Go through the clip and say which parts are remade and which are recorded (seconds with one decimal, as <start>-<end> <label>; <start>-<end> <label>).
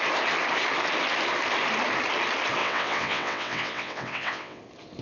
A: 0.0-2.6 recorded; 2.6-4.6 remade; 4.6-5.0 recorded